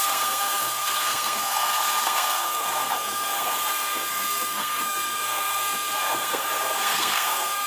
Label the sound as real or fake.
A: fake